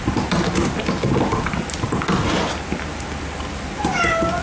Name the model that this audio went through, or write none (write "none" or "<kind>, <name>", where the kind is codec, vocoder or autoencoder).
none